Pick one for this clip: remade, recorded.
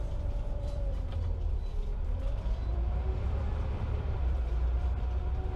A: remade